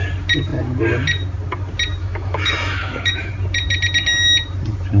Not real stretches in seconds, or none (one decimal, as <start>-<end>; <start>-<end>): 2.0-3.3